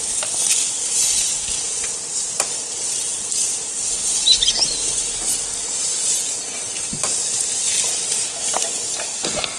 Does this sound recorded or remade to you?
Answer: recorded